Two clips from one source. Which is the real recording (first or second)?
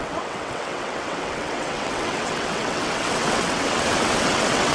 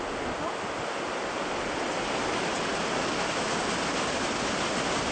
second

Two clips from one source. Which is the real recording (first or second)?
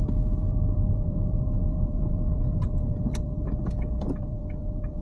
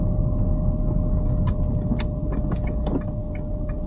second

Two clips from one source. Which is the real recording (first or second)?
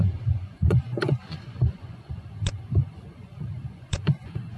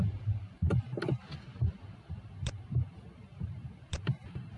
second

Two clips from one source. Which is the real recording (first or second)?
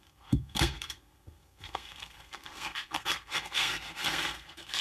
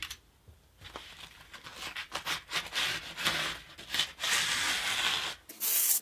second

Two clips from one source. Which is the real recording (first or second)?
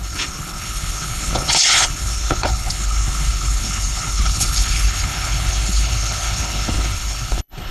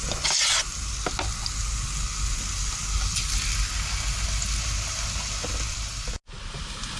second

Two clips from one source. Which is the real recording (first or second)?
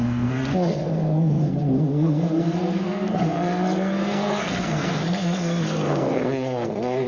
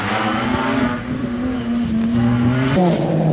second